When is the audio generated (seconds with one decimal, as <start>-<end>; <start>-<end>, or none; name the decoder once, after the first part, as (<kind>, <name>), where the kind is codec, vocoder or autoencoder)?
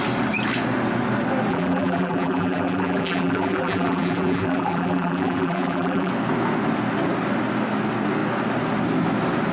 1.5-6.1 (vocoder, BigVGAN v2)